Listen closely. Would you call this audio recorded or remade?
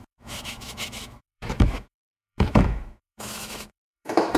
remade